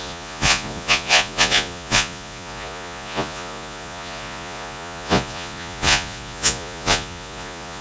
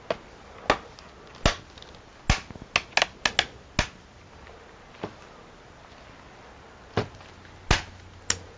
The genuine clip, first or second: second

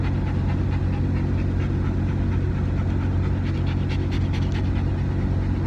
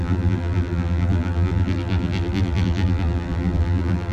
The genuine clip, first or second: first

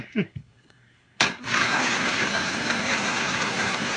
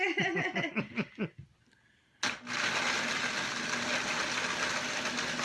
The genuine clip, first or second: second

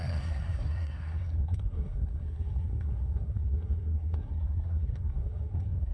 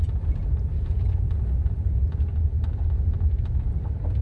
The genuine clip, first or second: second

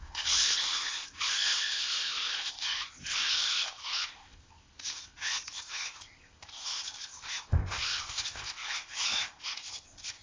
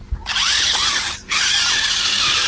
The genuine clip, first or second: second